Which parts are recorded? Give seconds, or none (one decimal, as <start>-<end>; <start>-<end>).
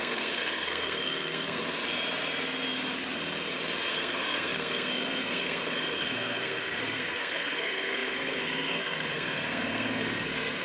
1.6-3.9